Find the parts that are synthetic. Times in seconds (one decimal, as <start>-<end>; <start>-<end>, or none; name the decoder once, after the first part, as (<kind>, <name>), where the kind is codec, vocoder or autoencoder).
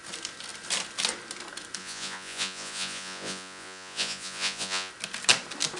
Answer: 1.8-4.9 (vocoder, Vocos)